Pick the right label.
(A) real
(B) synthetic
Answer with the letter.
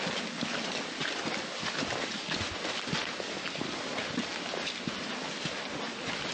A